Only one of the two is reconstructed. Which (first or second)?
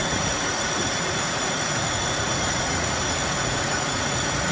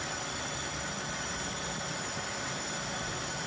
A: first